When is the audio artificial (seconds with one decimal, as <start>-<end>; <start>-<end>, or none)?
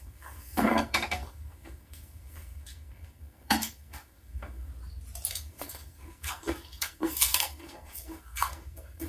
0.0-4.7; 5.3-9.1